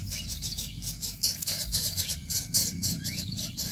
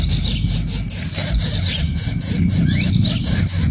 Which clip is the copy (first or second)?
first